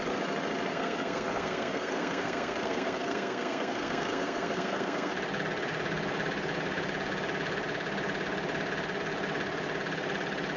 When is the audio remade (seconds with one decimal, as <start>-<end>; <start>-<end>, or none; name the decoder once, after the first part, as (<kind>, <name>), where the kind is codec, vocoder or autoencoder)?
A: 0.7-5.1 (codec, SNAC)